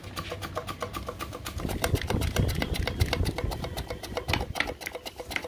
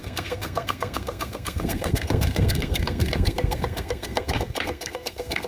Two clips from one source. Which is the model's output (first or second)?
second